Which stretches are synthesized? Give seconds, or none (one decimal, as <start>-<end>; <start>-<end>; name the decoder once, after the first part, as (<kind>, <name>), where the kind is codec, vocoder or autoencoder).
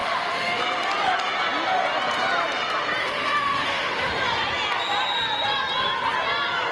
0.0-0.6 (autoencoder, DAC-VAE); 3.0-4.1